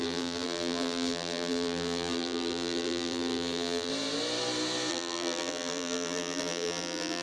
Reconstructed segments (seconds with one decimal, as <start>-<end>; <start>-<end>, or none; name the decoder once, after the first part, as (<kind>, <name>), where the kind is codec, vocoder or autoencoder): 0.0-3.9 (vocoder, BigVGAN v2); 4.9-7.2